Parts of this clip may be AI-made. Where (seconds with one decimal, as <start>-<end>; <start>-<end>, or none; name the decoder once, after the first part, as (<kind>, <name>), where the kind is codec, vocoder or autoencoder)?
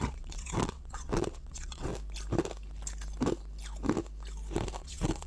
0.0-1.9 (vocoder, WaveNeXt); 4.8-5.3